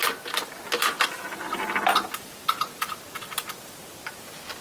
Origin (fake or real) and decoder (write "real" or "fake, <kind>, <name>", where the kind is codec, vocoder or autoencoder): real